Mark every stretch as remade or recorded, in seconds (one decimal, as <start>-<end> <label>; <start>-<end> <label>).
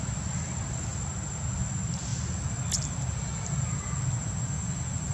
0.0-5.1 recorded